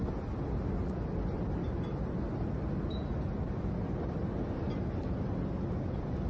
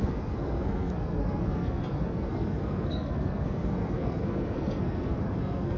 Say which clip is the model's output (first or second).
second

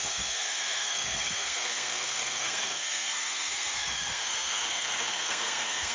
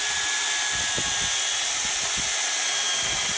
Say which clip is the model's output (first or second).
first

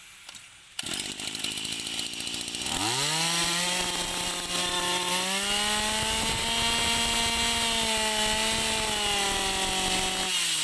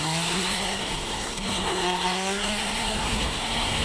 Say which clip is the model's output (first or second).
second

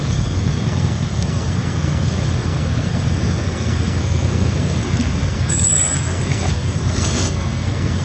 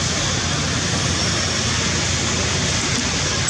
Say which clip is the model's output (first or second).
first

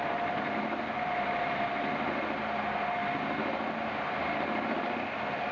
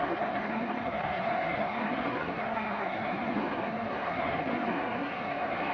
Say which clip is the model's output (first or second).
second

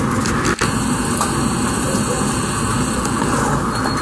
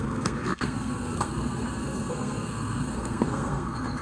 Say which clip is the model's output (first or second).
second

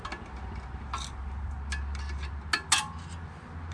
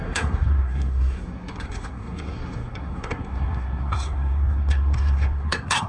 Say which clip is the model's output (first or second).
second